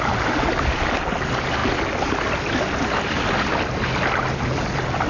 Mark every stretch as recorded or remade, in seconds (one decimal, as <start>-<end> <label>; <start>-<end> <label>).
0.0-5.1 recorded